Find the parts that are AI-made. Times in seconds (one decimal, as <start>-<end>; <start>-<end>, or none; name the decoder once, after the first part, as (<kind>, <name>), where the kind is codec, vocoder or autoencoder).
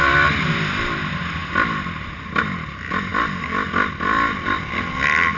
none